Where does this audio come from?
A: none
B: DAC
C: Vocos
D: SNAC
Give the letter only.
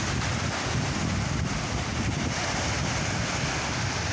A